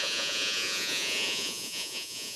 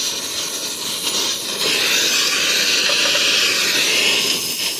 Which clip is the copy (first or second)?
first